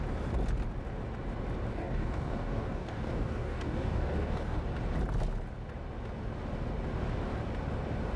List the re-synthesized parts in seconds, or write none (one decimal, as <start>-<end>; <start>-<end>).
1.7-4.6